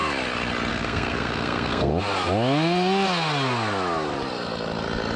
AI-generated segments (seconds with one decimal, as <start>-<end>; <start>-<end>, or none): 0.7-1.9